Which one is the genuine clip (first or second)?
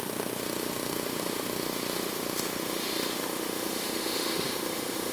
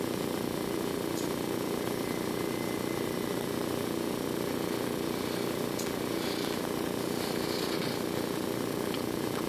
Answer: second